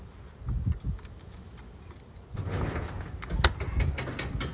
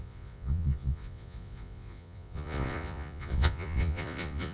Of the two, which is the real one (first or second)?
first